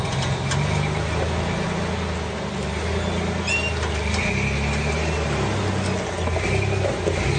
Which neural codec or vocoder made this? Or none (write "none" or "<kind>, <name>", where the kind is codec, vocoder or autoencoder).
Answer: none